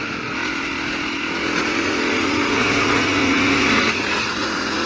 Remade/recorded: remade